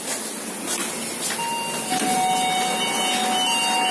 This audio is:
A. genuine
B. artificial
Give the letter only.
A